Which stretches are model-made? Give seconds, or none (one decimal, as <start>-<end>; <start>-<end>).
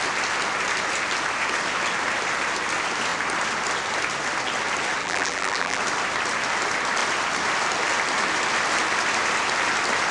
5.0-5.8